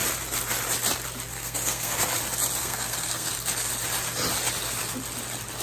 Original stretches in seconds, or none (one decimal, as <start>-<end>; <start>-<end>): 0.0-1.3; 2.0-2.6; 3.3-5.6

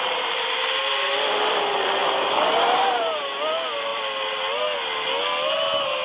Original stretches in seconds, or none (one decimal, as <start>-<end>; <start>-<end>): 0.0-6.0

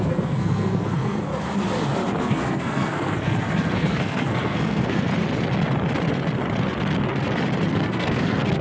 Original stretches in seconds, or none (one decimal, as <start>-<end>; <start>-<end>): 1.3-2.2; 5.1-7.7

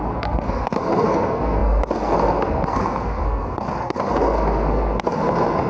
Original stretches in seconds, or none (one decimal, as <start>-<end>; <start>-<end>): none